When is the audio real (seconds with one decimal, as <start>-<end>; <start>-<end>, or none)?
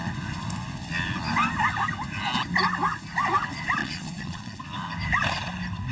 0.0-3.8; 4.6-5.9